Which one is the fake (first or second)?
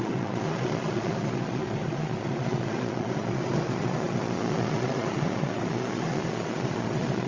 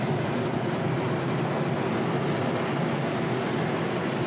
first